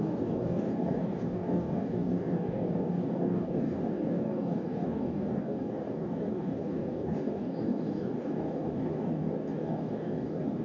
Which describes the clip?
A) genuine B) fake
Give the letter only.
B